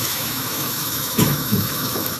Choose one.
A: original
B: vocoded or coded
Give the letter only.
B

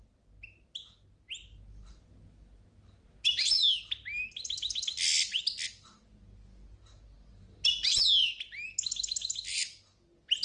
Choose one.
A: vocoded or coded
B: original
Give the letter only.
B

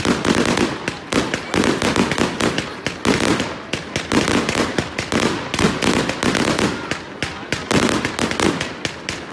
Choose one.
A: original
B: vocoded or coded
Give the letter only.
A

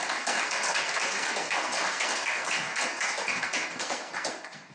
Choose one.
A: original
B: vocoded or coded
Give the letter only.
B